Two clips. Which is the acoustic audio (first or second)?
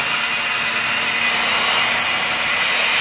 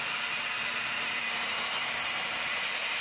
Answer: first